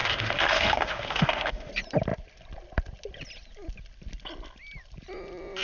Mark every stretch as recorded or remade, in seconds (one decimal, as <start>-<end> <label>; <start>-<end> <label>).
0.0-1.7 remade; 1.7-5.6 recorded